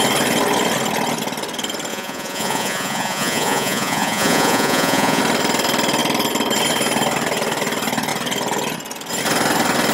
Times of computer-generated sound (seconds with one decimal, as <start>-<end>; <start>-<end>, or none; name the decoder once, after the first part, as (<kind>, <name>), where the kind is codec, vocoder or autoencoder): 1.9-5.2 (vocoder, Vocos)